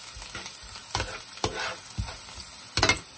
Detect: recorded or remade recorded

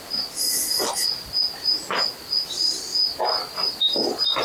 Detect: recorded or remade recorded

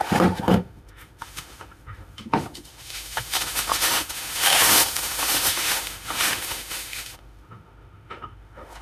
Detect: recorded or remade remade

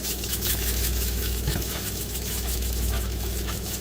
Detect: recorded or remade remade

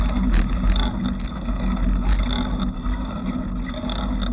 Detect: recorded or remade recorded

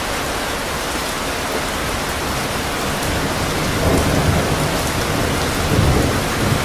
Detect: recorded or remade recorded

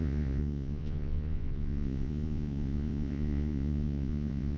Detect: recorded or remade remade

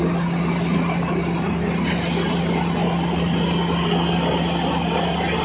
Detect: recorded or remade recorded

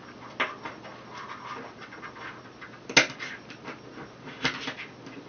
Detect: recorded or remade recorded